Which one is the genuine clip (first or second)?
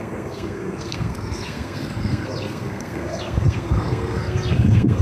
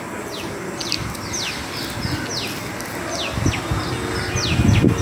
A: second